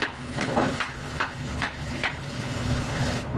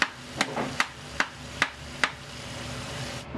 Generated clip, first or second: first